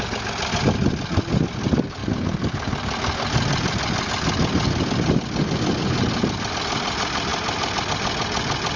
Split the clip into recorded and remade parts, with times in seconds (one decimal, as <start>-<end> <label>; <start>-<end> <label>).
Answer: 0.0-8.8 recorded